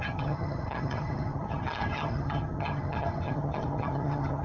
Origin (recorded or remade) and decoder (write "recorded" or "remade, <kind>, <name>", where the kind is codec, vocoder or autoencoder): remade, vocoder, HiFi-GAN